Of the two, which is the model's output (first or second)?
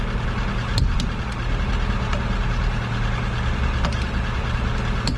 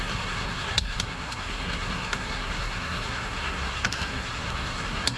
second